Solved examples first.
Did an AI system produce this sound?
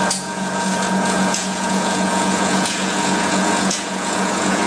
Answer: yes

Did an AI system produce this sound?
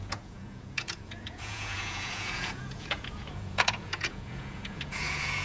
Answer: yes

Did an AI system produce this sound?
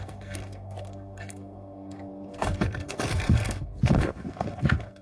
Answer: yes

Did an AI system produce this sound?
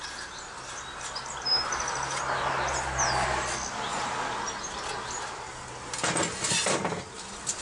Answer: no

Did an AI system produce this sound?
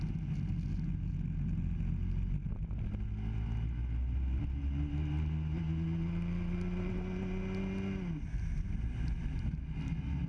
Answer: no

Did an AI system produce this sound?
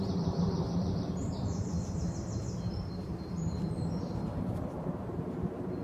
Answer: yes